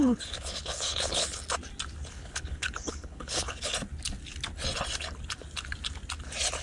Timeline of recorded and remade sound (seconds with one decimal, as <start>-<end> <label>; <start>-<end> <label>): 0.0-1.4 remade; 1.4-2.1 recorded; 2.1-3.7 remade; 3.7-6.6 recorded